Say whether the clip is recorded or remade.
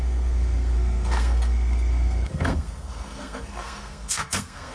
remade